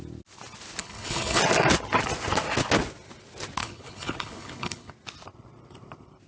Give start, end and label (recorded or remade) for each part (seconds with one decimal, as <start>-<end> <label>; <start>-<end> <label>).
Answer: 0.0-0.8 recorded; 0.8-1.4 remade; 1.4-3.6 recorded; 3.6-4.9 remade; 4.9-6.3 recorded